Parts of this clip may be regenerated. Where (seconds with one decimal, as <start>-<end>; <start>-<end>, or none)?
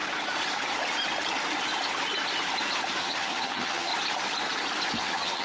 3.0-3.9; 5.0-5.4